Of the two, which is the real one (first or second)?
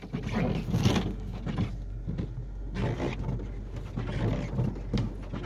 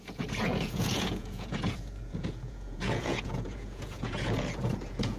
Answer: first